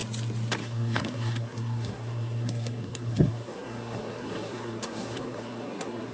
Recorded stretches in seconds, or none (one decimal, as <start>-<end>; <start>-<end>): 0.0-0.6